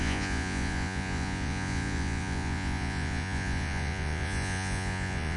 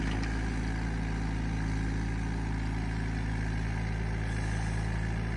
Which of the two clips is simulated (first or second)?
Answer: first